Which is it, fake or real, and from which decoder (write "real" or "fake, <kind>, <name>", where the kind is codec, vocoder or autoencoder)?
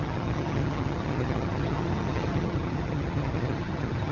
fake, vocoder, HiFi-GAN